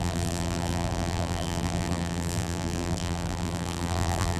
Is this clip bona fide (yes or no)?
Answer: no